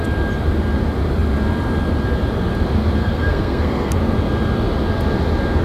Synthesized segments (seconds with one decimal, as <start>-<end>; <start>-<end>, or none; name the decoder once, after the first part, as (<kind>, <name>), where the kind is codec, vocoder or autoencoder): 3.0-4.0 (codec, SNAC)